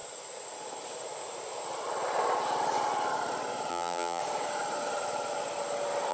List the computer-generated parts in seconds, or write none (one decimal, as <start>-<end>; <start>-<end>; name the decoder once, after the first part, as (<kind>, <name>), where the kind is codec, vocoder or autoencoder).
3.7-4.2 (vocoder, BigVGAN v2)